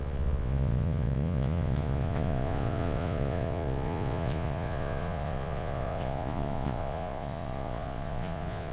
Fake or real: fake